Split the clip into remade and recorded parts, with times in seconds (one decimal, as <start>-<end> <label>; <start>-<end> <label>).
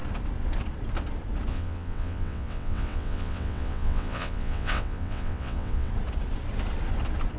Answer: 0.0-1.5 recorded; 1.5-5.9 remade; 5.9-7.4 recorded